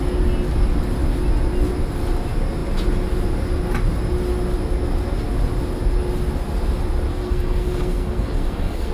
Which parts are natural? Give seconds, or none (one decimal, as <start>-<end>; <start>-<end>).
0.0-7.1